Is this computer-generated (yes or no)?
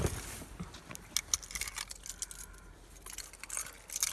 no